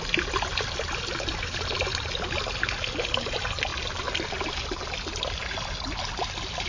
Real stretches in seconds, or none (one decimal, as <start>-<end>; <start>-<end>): 0.0-6.7